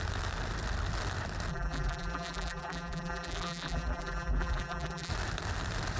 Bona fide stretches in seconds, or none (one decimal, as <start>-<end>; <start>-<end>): 0.0-1.5; 5.1-6.0